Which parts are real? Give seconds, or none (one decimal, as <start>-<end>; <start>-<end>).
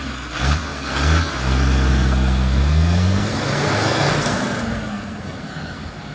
none